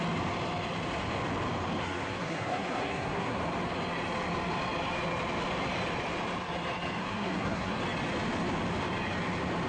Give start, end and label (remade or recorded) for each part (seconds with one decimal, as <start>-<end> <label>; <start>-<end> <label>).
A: 0.0-1.8 recorded; 1.8-3.4 remade; 3.4-7.0 recorded; 7.0-7.8 remade; 7.8-9.7 recorded

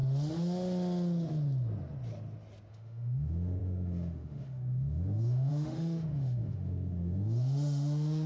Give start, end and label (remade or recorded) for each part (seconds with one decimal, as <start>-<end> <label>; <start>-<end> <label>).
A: 0.0-2.7 recorded; 2.7-8.3 remade